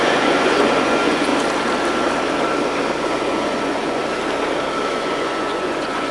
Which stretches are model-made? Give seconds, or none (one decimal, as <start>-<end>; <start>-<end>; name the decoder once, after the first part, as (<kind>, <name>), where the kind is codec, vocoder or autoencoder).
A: 0.0-1.3 (vocoder, Vocos); 3.0-4.0; 4.9-6.1